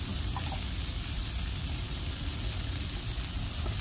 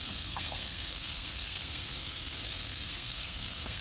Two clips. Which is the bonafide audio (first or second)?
first